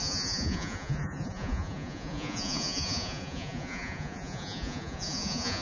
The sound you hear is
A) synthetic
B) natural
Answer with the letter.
A